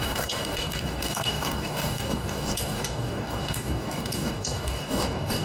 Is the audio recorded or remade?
remade